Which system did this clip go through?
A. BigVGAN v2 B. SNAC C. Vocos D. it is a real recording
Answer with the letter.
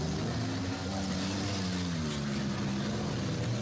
D